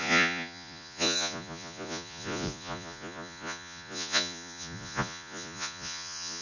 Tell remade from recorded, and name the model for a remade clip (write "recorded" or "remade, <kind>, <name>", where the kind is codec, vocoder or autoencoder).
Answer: remade, vocoder, Vocos